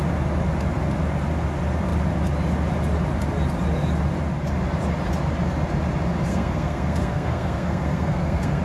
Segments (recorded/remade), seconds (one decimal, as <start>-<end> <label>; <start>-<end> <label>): 0.0-6.3 recorded; 6.3-8.6 remade